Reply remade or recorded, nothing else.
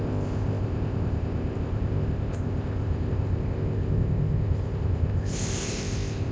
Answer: remade